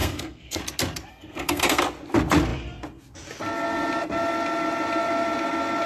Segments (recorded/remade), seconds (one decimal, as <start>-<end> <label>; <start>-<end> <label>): 0.0-0.6 remade; 0.6-1.1 recorded; 1.1-1.8 remade; 1.8-5.9 recorded